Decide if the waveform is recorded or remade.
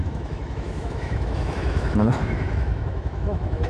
remade